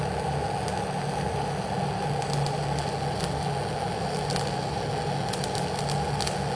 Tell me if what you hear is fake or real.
real